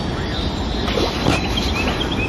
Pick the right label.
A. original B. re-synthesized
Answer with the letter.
A